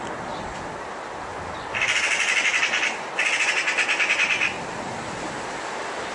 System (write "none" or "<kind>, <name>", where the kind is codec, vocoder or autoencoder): none